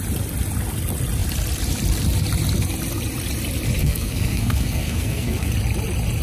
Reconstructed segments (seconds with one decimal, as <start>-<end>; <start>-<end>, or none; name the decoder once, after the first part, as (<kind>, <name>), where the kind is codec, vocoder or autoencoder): 3.8-5.5 (codec, SNAC)